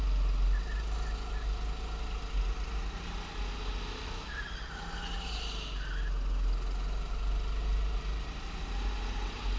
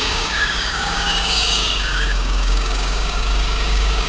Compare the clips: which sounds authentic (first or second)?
first